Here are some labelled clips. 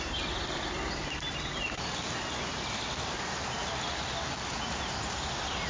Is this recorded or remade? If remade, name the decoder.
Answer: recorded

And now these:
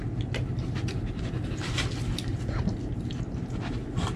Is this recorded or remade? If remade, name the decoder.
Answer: recorded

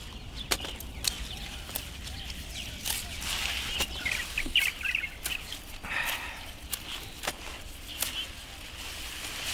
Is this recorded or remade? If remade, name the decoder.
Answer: recorded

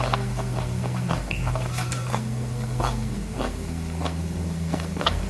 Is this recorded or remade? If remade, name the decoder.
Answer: remade, codec, SNAC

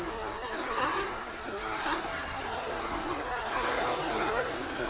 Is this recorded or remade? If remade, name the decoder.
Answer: remade, codec, SNAC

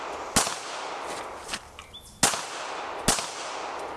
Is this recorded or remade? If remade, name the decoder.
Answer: recorded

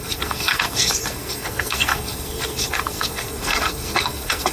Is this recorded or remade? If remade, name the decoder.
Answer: remade, codec, SNAC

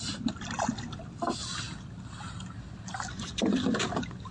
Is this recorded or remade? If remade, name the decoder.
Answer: recorded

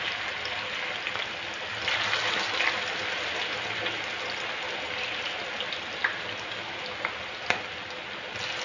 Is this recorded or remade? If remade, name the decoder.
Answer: recorded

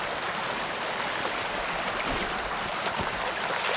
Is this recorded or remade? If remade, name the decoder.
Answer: recorded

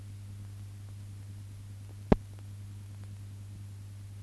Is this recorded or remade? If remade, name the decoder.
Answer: recorded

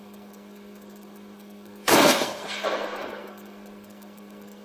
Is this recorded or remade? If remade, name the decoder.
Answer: remade, codec, SNAC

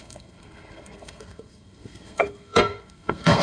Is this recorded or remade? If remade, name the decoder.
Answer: remade, codec, SNAC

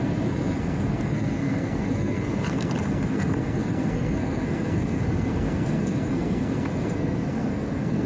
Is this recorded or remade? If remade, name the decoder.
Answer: remade, codec, SNAC